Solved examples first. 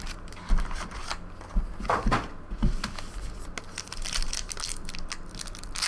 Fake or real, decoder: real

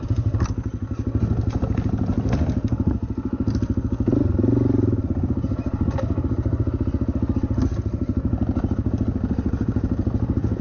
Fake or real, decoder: real